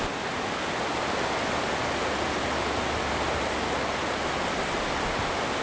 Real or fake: real